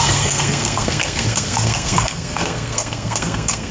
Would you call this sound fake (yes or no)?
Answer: yes